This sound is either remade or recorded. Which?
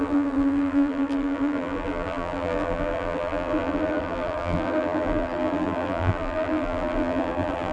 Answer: remade